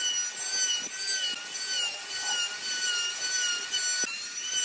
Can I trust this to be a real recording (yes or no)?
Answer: yes